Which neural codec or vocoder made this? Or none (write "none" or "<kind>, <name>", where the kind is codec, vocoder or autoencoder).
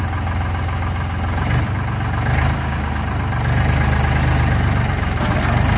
none